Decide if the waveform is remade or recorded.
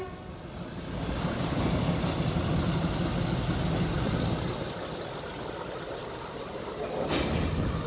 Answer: recorded